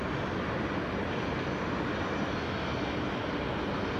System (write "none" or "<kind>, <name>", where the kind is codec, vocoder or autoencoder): none